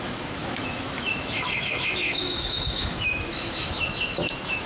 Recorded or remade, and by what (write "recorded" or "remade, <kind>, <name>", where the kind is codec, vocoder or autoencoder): remade, autoencoder, DAC-VAE